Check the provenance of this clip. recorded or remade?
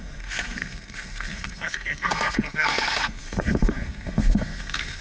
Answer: remade